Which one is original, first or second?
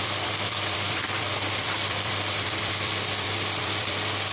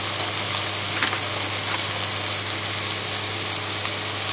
second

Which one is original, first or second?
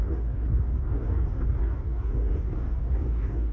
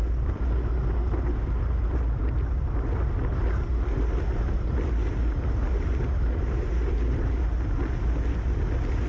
second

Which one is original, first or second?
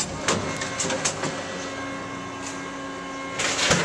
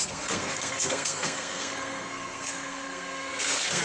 first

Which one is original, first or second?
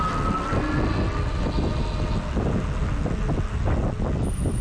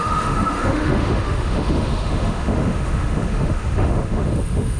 first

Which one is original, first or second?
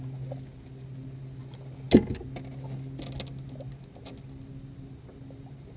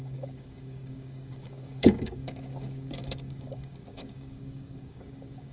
first